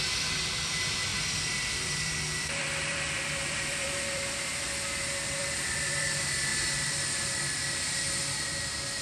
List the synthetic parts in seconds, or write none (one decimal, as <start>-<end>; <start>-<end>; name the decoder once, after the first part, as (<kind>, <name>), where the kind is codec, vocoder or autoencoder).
1.1-4.6 (vocoder, BigVGAN v2); 5.4-6.1